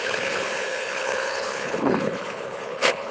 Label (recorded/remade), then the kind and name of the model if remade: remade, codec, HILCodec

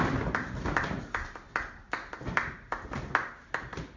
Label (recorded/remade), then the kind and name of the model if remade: recorded